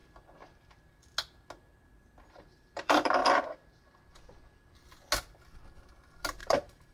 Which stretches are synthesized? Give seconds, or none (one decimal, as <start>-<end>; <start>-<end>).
2.3-3.2; 6.4-6.9